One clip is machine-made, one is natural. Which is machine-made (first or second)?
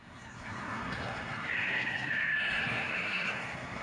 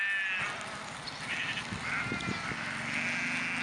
first